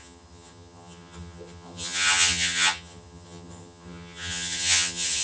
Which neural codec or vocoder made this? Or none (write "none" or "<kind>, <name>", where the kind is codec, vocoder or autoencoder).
vocoder, HiFi-GAN